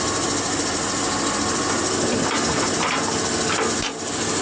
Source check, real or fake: real